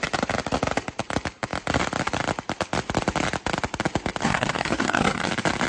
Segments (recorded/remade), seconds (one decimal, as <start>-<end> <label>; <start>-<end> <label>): 0.0-4.2 recorded; 4.2-5.3 remade; 5.3-5.7 recorded